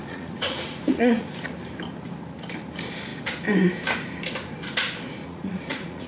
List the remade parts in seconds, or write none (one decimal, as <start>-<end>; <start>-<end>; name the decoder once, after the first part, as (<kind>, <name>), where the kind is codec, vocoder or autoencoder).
0.0-1.5 (vocoder, Vocos); 5.2-6.1